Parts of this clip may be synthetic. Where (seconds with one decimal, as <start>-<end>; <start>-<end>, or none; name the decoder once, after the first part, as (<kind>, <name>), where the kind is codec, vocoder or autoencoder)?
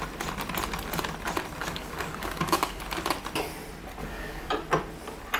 1.6-2.8 (codec, DAC); 4.0-4.5